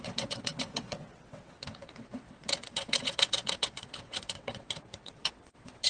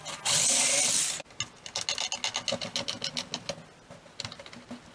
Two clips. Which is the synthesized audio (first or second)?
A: first